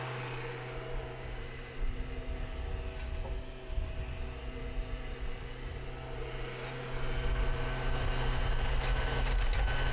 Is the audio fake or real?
real